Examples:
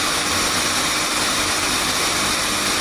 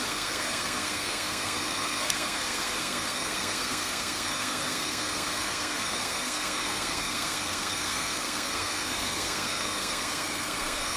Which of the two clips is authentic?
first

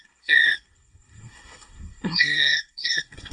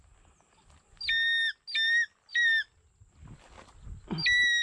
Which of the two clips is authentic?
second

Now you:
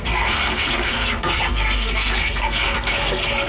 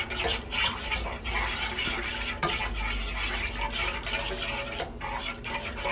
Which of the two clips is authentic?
second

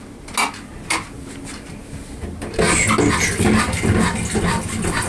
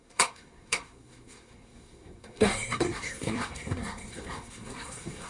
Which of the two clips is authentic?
first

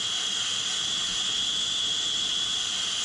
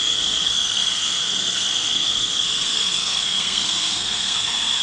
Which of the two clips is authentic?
first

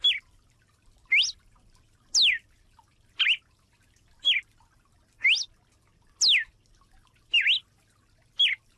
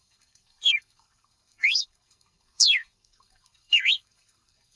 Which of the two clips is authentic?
first